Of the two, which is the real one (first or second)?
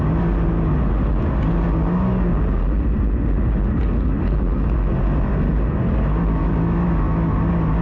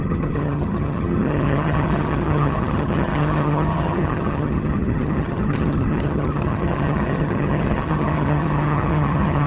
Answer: first